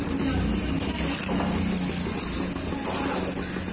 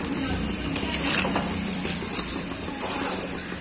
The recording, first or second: first